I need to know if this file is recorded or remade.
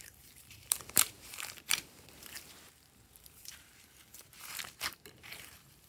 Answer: remade